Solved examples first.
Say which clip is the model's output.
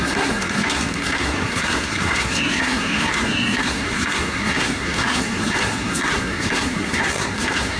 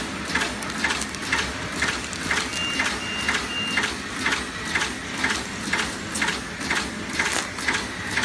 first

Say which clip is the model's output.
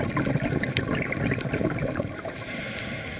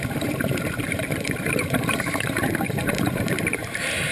second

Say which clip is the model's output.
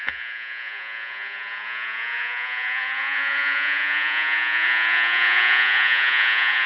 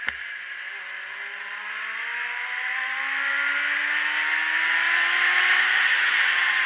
first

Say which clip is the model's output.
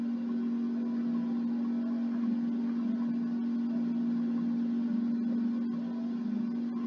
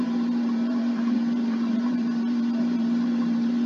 second